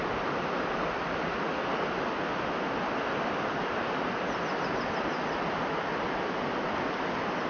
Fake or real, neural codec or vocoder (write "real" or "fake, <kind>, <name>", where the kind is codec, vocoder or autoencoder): real